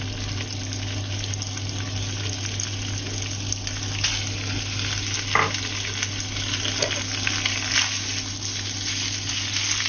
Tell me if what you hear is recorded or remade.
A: recorded